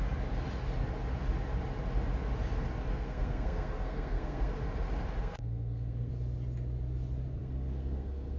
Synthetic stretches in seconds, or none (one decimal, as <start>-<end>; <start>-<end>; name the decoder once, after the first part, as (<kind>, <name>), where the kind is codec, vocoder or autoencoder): 2.9-4.5 (codec, SNAC); 5.2-6.1; 7.4-8.4